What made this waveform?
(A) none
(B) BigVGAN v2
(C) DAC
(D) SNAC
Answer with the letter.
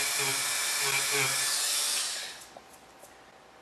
A